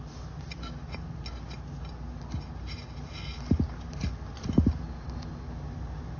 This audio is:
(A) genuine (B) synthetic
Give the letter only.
A